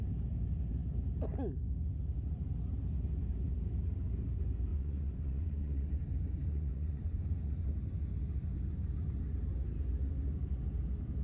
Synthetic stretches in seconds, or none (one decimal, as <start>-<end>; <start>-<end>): 4.7-6.0; 6.5-7.5